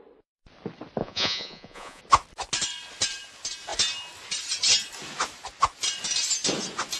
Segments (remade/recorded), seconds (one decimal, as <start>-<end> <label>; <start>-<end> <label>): 0.0-1.0 recorded; 1.0-2.0 remade; 2.0-7.0 recorded